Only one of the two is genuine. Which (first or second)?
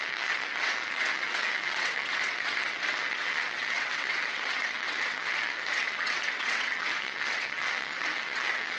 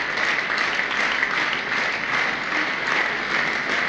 second